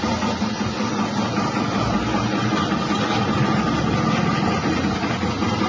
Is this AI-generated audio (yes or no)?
no